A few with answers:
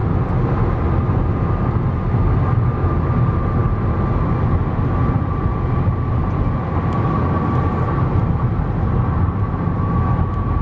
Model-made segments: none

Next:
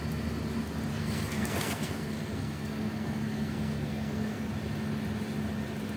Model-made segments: 0.9-4.5 (codec, SNAC)

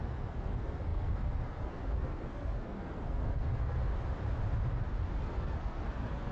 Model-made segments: 0.0-3.9 (codec, SNAC); 5.2-6.3

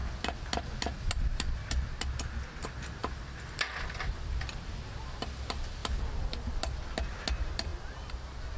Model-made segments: none

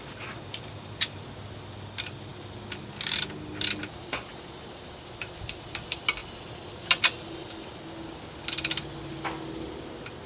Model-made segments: 3.8-5.4 (vocoder, BigVGAN v2)

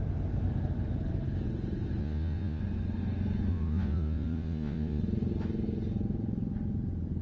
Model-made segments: 2.0-2.6 (vocoder, Vocos); 3.5-5.0